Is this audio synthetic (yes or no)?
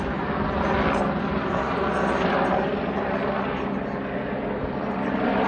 no